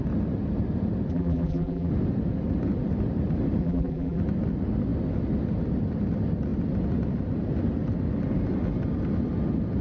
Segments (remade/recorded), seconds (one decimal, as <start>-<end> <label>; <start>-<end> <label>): 0.0-1.1 recorded; 1.1-1.9 remade; 1.9-3.6 recorded; 3.6-4.2 remade; 4.2-9.8 recorded